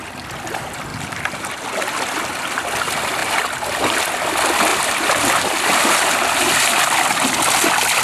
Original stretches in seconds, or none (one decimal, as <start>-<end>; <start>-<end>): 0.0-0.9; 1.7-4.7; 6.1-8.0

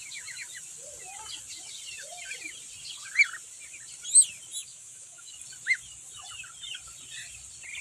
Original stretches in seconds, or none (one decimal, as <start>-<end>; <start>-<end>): 0.0-4.6; 5.3-7.8

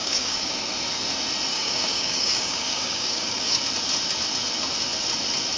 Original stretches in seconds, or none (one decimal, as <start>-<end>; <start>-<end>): 0.5-1.5; 3.6-5.6

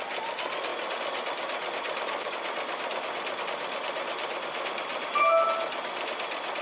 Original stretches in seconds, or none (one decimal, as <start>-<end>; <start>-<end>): 0.0-6.6

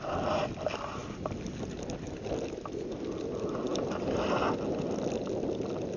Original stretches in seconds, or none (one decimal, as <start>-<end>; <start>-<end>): 0.0-6.0

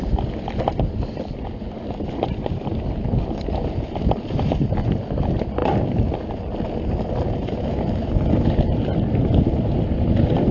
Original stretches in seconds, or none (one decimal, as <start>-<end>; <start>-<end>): 0.0-10.5

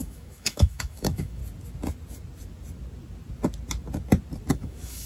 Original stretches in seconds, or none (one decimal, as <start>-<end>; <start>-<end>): 1.4-4.5